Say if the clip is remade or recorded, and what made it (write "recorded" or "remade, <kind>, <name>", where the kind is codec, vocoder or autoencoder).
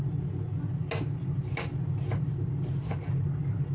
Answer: recorded